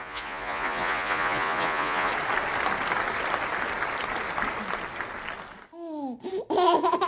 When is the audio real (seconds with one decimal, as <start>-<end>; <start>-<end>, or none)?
2.1-7.1

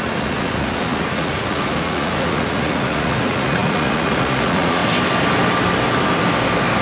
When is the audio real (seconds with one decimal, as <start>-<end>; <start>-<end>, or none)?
4.8-6.8

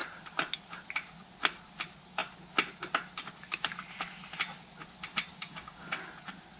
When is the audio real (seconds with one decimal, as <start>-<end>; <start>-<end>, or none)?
0.0-5.3; 6.0-6.6

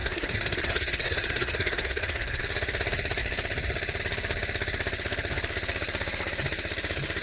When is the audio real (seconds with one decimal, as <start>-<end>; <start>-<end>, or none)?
2.4-7.2